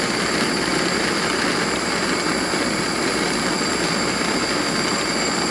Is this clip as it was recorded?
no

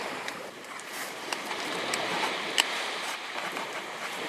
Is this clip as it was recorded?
no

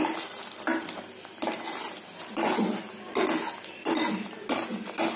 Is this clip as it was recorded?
yes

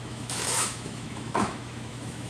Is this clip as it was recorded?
no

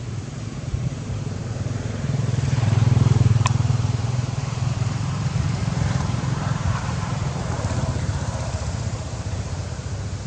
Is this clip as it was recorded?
no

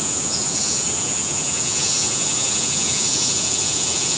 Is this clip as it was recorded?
no